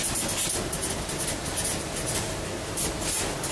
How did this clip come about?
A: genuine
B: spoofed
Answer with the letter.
A